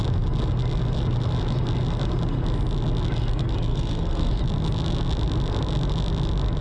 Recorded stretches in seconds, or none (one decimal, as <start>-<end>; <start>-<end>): 0.0-3.7; 4.3-6.6